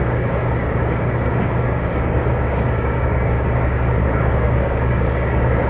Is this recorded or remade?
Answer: remade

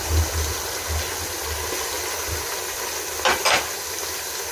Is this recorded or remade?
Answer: recorded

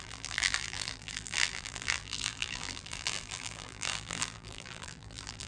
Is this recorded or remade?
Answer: remade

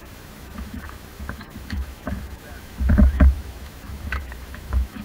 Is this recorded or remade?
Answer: remade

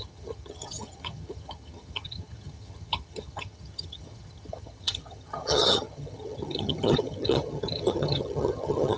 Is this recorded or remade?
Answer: remade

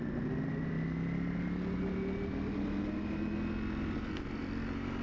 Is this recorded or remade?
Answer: recorded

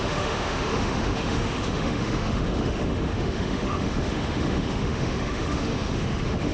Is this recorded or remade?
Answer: remade